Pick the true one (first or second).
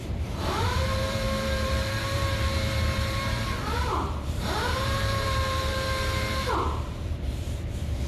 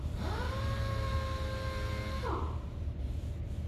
second